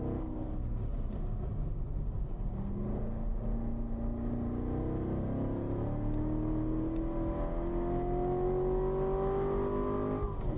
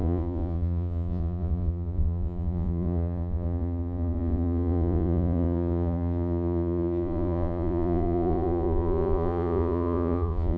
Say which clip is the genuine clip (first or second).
first